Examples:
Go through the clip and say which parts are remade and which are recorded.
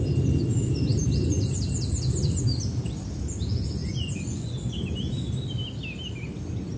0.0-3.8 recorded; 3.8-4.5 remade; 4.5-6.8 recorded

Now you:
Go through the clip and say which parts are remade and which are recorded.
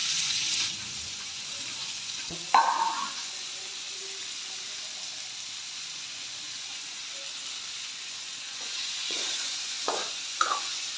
0.0-4.0 remade; 4.0-5.6 recorded; 5.6-7.0 remade; 7.0-7.7 recorded; 7.7-11.0 remade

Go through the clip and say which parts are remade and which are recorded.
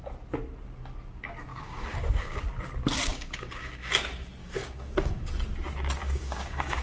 0.0-1.5 recorded; 1.5-2.4 remade; 2.4-3.1 recorded; 3.1-3.9 remade; 3.9-4.4 recorded; 4.4-5.3 remade; 5.3-6.0 recorded; 6.0-6.8 remade